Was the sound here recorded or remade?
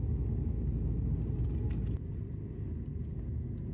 recorded